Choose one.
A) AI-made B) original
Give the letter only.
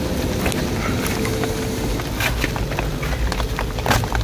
B